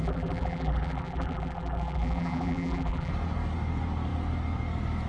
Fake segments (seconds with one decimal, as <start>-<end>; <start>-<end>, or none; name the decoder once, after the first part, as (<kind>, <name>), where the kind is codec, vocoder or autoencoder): 0.0-3.1 (vocoder, BigVGAN v2)